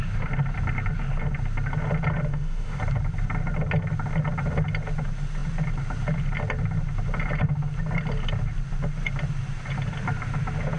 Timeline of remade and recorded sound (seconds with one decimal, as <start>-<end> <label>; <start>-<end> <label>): 0.0-2.3 recorded; 2.3-2.8 remade; 2.8-10.8 recorded

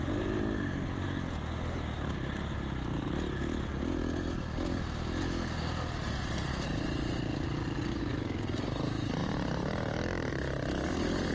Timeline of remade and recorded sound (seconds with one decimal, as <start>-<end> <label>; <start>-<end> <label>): 0.0-11.3 recorded

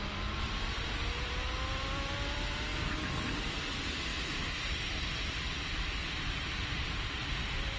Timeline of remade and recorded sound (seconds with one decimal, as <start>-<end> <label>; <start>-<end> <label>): 0.0-2.7 remade; 2.7-3.3 recorded; 3.3-4.1 remade; 4.1-5.0 recorded; 5.0-7.8 remade

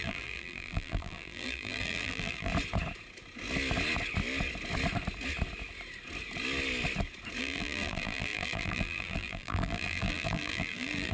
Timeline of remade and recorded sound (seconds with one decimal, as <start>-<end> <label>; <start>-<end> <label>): 0.0-2.5 remade; 2.5-7.4 recorded; 7.4-11.1 remade